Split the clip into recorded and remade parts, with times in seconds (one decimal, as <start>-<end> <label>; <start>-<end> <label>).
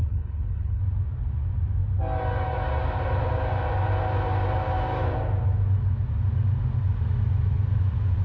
0.0-0.8 remade; 0.8-8.2 recorded